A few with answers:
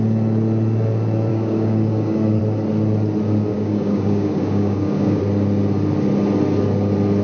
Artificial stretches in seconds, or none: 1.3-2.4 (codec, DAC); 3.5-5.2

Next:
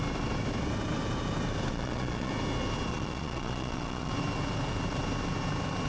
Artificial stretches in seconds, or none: 1.7-2.3 (vocoder, Vocos); 2.9-4.1

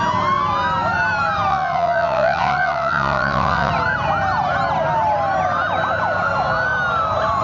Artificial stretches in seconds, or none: 1.5-3.7 (vocoder, WaveNeXt)

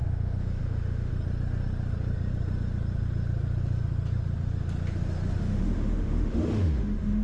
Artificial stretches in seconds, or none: 0.0-1.1 (autoencoder, DAC-VAE); 5.4-7.2

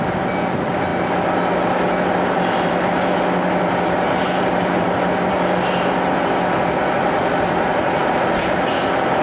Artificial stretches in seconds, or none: none

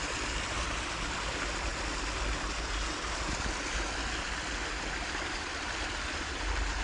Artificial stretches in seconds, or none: 0.0-1.7 (vocoder, BigVGAN v2); 4.9-6.8

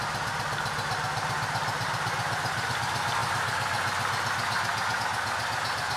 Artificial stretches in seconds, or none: none